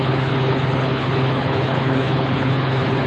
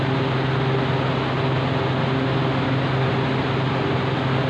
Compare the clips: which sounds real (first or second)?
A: second